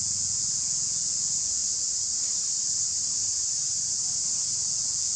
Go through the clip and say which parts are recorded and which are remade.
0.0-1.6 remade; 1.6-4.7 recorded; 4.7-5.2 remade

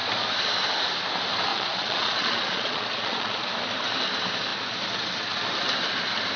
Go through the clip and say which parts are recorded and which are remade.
0.0-1.5 recorded; 1.5-3.5 remade; 3.5-6.4 recorded

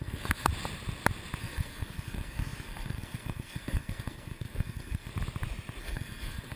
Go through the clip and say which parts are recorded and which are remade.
0.0-0.5 remade; 0.5-1.4 recorded; 1.4-5.1 remade; 5.1-5.8 recorded; 5.8-6.6 remade

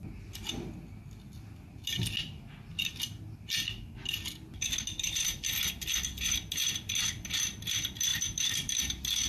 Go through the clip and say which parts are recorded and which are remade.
0.0-8.1 recorded; 8.1-8.8 remade; 8.8-9.3 recorded

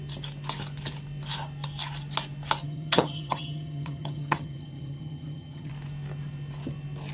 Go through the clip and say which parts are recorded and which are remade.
0.0-2.6 recorded; 2.6-5.7 remade; 5.7-7.1 recorded